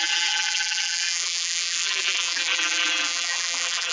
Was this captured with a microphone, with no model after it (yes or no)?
no